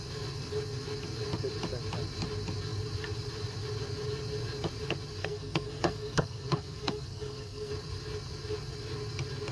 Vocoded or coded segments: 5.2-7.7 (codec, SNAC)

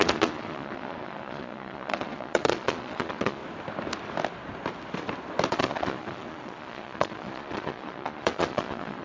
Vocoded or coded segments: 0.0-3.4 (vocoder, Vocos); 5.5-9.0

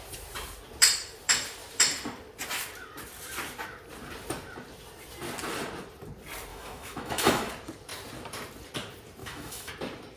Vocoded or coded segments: 6.5-7.5 (autoencoder, DAC-VAE); 9.2-9.7

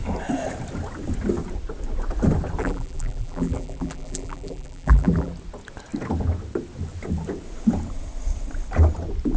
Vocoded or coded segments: 2.6-5.3 (vocoder, BigVGAN v2)